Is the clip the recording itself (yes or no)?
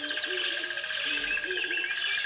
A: yes